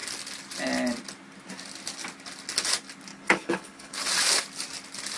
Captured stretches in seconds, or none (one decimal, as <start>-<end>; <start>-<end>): 0.0-3.1; 4.0-5.2